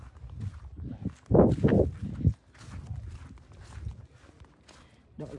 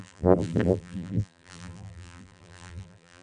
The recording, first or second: first